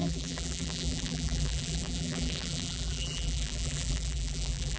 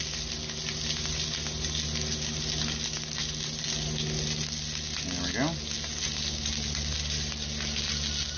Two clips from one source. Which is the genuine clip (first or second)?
second